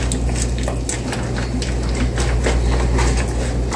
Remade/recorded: recorded